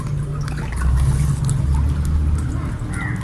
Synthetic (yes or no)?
no